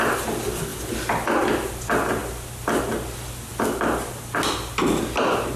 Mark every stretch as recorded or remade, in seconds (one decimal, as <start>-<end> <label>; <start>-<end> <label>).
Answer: 0.0-5.6 recorded